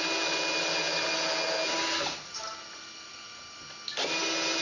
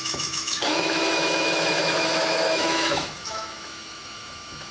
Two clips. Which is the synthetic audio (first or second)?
second